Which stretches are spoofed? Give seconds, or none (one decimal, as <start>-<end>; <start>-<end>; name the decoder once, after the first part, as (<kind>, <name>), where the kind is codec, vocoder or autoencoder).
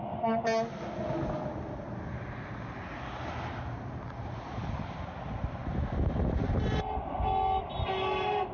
none